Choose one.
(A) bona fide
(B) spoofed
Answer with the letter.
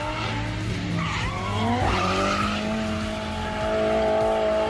A